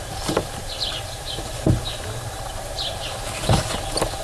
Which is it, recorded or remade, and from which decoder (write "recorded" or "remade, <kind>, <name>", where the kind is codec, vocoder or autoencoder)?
remade, vocoder, BigVGAN v2